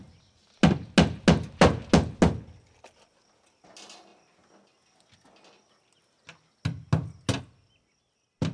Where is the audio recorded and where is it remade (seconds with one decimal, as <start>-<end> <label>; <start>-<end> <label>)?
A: 0.0-8.5 recorded